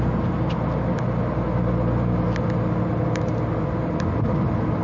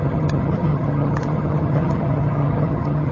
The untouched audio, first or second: first